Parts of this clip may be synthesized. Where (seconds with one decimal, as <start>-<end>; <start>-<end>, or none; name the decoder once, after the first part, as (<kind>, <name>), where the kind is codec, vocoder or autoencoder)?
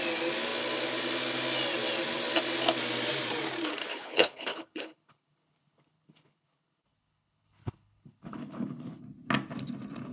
3.8-9.0 (codec, HILCodec)